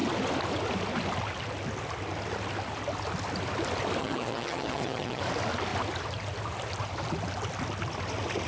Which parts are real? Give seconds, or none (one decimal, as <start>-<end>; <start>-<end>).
0.0-4.0; 5.2-8.5